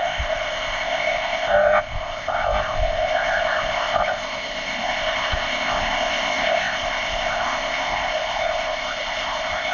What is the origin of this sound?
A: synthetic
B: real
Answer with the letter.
A